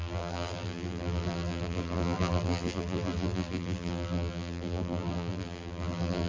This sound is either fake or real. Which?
fake